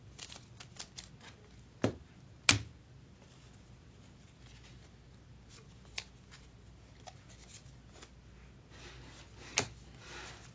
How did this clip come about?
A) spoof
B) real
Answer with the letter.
B